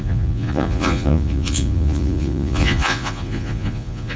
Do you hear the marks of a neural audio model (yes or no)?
yes